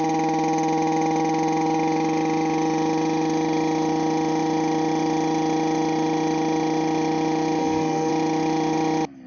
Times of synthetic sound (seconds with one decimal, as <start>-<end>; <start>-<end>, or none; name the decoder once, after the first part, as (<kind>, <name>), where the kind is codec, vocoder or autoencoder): 7.6-8.1 (codec, SNAC)